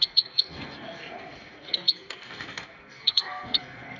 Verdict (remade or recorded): remade